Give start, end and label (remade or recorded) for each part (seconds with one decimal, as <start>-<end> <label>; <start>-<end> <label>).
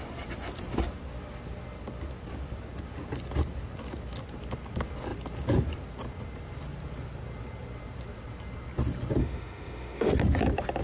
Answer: 0.0-9.2 recorded; 9.2-10.1 remade; 10.1-10.8 recorded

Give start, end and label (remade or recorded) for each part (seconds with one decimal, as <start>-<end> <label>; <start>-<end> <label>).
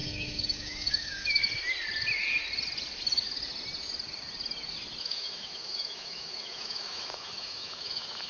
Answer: 0.0-1.4 remade; 1.4-5.0 recorded; 5.0-8.3 remade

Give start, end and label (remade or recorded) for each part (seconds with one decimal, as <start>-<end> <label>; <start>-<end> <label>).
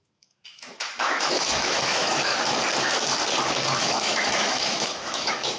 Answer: 0.0-2.3 remade; 2.3-3.8 recorded; 3.8-5.6 remade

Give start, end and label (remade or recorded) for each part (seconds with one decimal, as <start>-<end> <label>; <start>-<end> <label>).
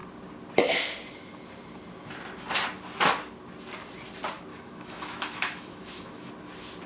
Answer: 0.0-4.5 recorded; 4.5-6.3 remade; 6.3-6.9 recorded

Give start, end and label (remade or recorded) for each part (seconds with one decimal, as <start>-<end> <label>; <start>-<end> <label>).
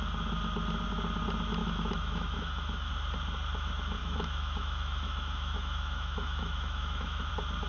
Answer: 0.0-1.6 recorded; 1.6-2.9 remade; 2.9-4.0 recorded; 4.0-7.3 remade; 7.3-7.7 recorded